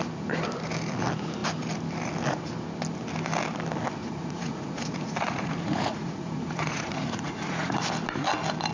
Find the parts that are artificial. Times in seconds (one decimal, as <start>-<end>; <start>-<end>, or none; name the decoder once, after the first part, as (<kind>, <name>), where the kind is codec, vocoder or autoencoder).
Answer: 4.0-7.8 (vocoder, Vocos)